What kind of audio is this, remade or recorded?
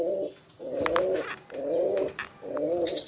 recorded